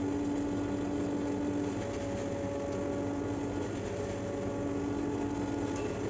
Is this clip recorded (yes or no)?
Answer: yes